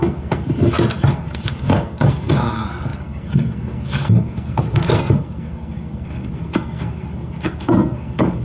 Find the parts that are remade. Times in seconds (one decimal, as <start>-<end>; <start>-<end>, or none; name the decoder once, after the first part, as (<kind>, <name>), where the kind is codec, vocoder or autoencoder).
0.0-8.4 (codec, SNAC)